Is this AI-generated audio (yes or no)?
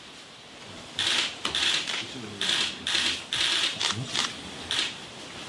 no